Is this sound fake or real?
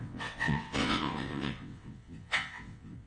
fake